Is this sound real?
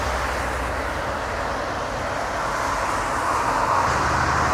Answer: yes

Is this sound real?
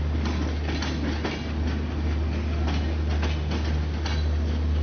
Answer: yes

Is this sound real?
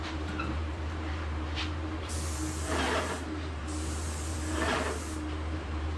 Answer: no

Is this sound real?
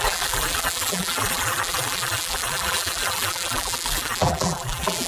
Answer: no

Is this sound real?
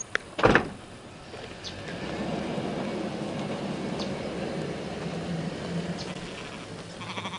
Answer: yes